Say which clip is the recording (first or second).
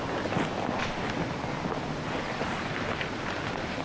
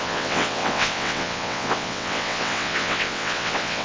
first